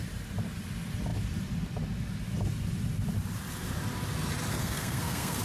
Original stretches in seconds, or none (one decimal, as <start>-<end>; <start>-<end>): 0.0-4.5